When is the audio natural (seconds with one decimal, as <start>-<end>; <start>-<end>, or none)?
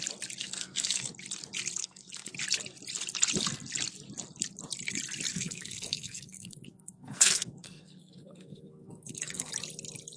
0.0-0.4; 1.1-1.8; 2.3-5.3; 9.5-10.2